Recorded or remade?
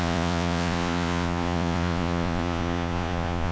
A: remade